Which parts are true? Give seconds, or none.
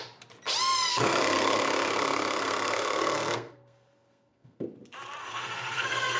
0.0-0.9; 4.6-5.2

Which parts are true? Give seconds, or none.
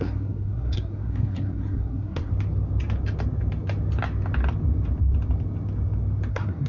2.3-6.3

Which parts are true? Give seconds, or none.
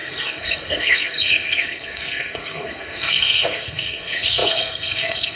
none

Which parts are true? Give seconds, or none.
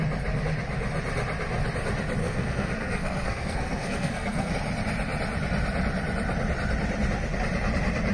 0.0-2.2; 4.5-8.1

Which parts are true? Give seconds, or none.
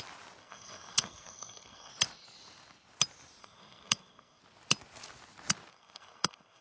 0.0-0.4; 1.9-3.4; 4.4-5.7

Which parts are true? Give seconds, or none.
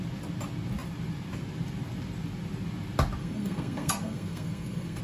0.0-3.2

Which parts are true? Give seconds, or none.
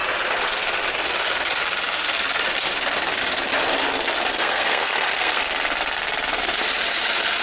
0.0-4.3; 5.4-7.4